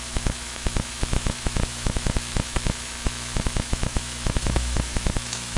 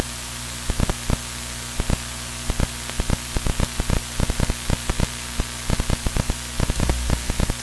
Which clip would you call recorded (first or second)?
second